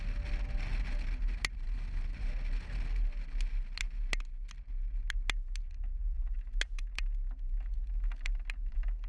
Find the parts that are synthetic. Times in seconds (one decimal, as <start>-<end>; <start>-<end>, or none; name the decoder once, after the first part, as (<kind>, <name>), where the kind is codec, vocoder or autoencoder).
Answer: none